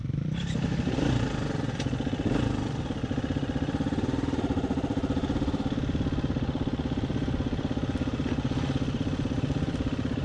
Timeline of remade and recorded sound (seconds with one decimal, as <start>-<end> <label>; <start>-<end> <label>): 0.0-10.2 remade